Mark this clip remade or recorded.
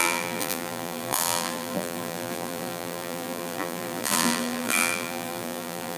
remade